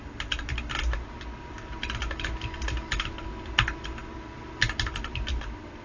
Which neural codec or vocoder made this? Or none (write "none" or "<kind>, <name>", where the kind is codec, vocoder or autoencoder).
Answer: none